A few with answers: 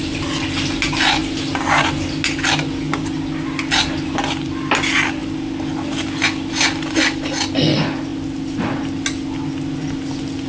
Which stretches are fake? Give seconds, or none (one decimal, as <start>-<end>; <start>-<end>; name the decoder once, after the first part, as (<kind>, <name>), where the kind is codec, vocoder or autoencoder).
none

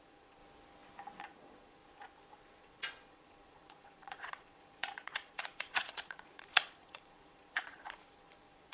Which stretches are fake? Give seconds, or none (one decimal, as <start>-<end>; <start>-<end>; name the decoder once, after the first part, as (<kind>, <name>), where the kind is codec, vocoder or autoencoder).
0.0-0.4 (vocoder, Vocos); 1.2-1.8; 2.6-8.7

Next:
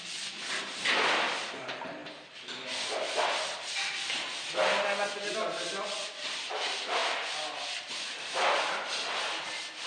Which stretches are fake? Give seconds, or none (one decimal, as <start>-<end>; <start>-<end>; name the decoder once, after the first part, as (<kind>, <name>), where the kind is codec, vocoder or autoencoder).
0.0-2.0 (vocoder, BigVGAN v2); 5.4-7.0; 9.4-9.9